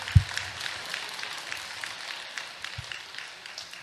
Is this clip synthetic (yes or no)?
no